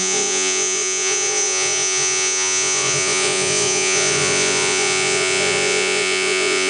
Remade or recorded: remade